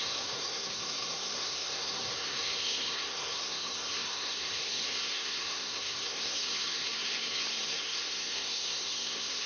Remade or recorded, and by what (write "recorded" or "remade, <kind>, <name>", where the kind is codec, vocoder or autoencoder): remade, codec, SNAC